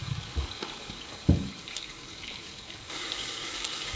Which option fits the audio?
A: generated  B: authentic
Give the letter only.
A